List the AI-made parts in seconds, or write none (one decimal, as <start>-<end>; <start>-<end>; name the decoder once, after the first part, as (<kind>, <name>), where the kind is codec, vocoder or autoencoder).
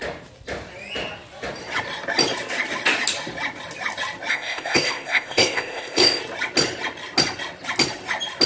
4.3-6.2 (codec, ZipCodec)